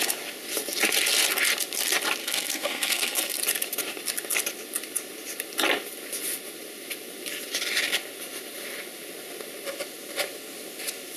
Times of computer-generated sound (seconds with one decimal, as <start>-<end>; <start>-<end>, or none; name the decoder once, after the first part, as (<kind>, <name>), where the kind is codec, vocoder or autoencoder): 2.2-3.4 (codec, SNAC)